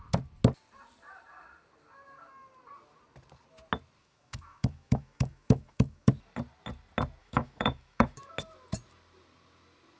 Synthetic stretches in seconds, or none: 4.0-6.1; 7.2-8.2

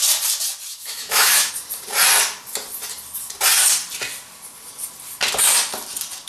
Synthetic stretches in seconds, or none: 0.7-1.5

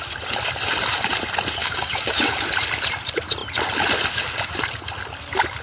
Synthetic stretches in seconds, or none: 1.6-2.4

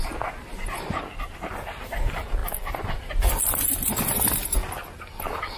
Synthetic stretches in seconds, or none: none

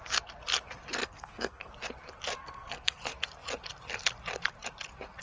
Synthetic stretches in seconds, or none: 1.0-1.7; 2.4-3.0